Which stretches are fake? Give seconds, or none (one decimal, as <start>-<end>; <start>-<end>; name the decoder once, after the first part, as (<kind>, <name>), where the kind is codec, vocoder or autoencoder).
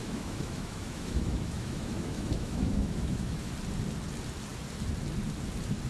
0.0-3.5 (autoencoder, DAC-VAE)